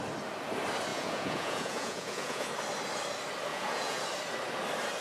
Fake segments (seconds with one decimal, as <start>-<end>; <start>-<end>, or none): 0.9-2.5; 3.5-4.0